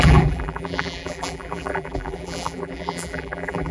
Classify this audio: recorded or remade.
remade